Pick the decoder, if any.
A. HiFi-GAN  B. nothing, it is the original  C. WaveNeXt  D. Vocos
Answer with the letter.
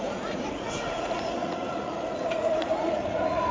D